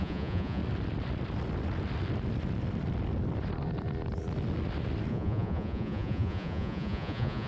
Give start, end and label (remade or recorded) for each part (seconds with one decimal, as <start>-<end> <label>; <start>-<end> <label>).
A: 0.0-0.6 remade; 0.6-5.1 recorded; 5.1-7.5 remade